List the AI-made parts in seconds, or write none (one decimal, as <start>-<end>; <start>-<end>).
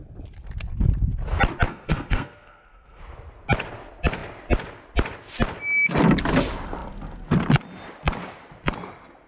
1.7-3.0